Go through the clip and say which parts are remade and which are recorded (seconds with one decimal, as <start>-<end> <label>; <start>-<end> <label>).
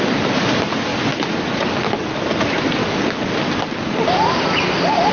0.0-0.9 remade; 0.9-2.2 recorded; 2.2-2.8 remade; 2.8-5.1 recorded